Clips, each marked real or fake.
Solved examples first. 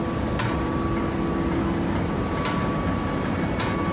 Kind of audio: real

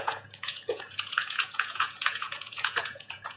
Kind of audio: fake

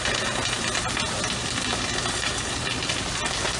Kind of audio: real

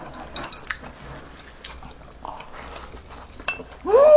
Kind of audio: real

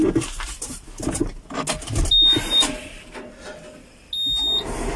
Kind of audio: real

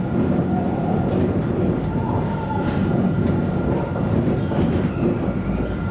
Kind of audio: real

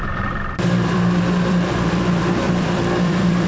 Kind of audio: fake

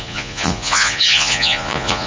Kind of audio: fake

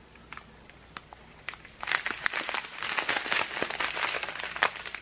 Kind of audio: real